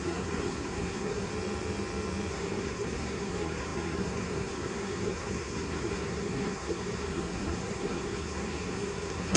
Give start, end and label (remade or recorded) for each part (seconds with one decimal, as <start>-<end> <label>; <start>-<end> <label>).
0.0-1.3 remade; 1.3-2.3 recorded; 2.3-9.4 remade